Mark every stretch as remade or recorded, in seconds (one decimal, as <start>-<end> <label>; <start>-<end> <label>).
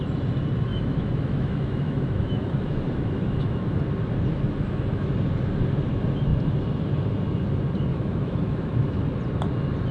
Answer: 0.0-0.7 recorded; 0.7-3.8 remade; 3.8-4.3 recorded; 4.3-5.1 remade; 5.1-7.9 recorded; 7.9-9.0 remade; 9.0-9.9 recorded